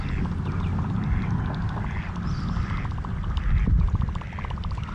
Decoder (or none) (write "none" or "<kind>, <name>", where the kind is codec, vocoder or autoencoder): none